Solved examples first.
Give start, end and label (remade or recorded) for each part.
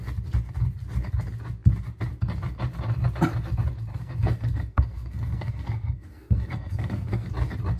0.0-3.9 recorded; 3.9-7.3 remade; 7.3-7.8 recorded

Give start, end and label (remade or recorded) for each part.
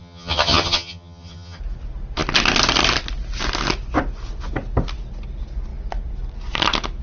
0.0-1.6 remade; 1.6-7.0 recorded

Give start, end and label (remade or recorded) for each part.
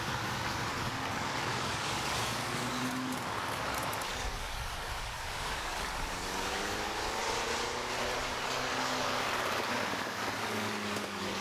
0.0-7.2 remade; 7.2-8.2 recorded; 8.2-11.4 remade